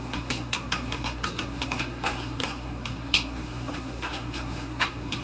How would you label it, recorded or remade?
remade